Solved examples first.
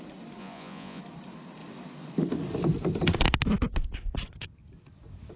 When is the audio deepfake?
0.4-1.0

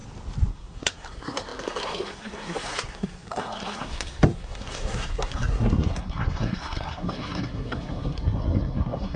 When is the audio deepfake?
0.5-9.2